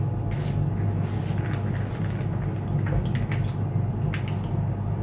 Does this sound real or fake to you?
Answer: real